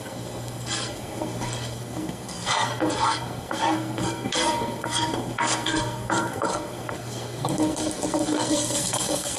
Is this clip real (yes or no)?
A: no